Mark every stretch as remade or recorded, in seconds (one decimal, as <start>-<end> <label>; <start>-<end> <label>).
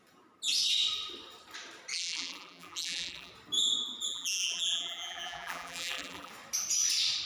0.0-1.9 recorded; 1.9-3.3 remade; 3.3-4.1 recorded; 4.1-6.3 remade; 6.3-7.3 recorded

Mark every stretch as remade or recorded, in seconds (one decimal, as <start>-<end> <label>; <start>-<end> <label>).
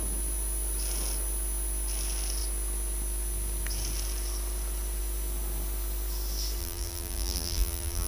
0.0-6.6 recorded; 6.6-8.1 remade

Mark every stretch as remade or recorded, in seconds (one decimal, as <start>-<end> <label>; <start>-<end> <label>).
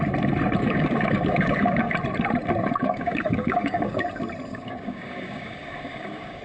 0.0-0.6 recorded; 0.6-1.9 remade; 1.9-2.8 recorded; 2.8-4.0 remade; 4.0-4.5 recorded; 4.5-6.4 remade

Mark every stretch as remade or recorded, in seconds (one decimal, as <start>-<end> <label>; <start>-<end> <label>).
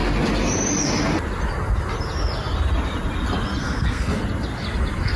0.0-3.6 recorded; 3.6-4.2 remade; 4.2-5.2 recorded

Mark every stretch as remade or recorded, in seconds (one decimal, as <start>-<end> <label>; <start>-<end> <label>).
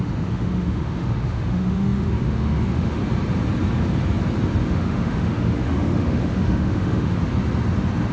0.0-3.0 remade; 3.0-4.6 recorded; 4.6-7.2 remade; 7.2-8.1 recorded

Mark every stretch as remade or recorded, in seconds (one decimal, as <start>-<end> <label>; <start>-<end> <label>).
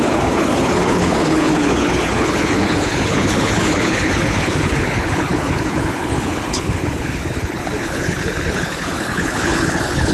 0.0-10.1 remade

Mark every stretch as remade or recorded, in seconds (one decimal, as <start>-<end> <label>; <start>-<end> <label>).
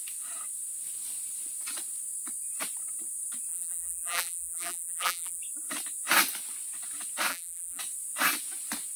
0.0-3.5 recorded; 3.5-5.4 remade; 5.4-7.3 recorded; 7.3-7.8 remade; 7.8-9.0 recorded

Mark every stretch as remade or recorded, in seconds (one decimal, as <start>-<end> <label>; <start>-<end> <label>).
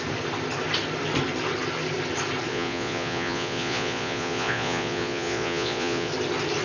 0.0-2.5 recorded; 2.5-6.1 remade; 6.1-6.6 recorded